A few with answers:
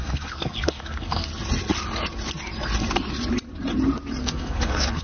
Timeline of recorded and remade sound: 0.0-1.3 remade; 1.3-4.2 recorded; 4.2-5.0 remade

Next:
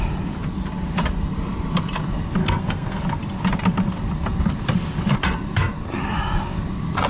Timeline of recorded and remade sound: 0.0-2.4 recorded; 2.4-3.0 remade; 3.0-7.1 recorded

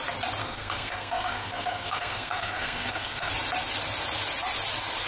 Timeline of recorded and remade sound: 0.0-0.4 recorded; 0.4-3.3 remade; 3.3-5.1 recorded

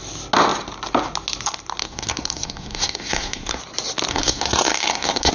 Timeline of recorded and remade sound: 0.0-1.8 recorded; 1.8-3.6 remade; 3.6-4.1 recorded; 4.1-5.3 remade